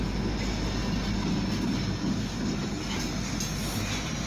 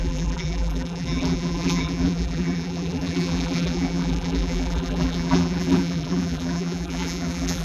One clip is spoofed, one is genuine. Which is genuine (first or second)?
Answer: first